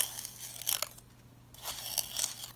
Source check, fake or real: real